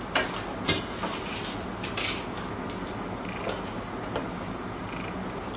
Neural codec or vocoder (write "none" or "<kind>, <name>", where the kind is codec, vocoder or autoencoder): none